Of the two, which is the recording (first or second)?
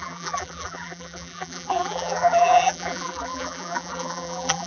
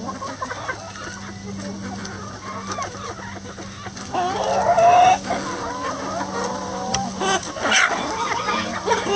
second